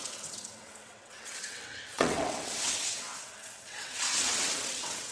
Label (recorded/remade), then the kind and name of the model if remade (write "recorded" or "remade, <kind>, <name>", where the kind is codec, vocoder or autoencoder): remade, vocoder, WaveNeXt